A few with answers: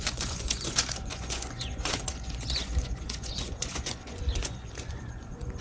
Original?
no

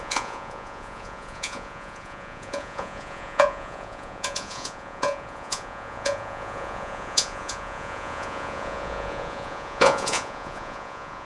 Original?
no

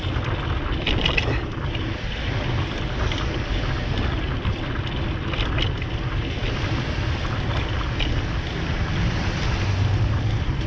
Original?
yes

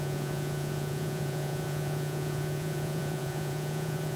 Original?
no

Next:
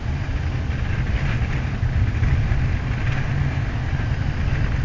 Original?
yes